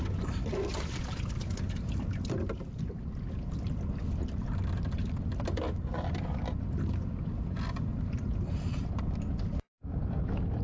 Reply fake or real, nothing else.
real